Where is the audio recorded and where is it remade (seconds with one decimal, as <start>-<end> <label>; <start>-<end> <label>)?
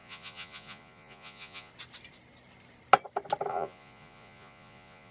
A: 0.0-1.7 remade; 1.7-3.5 recorded; 3.5-5.1 remade